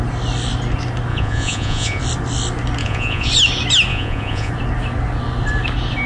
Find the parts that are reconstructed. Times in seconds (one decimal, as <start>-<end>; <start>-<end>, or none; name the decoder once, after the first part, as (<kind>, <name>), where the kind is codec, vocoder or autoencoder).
1.1-2.0 (vocoder, Vocos); 2.8-3.3; 3.9-4.5